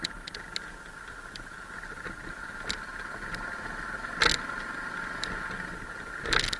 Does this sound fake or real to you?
real